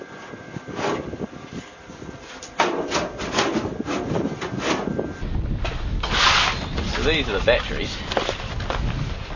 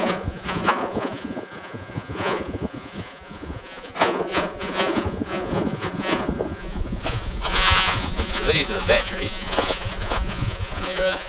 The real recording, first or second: first